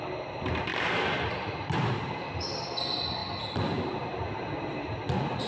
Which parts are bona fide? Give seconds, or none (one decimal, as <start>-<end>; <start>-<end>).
0.0-0.7; 2.2-5.5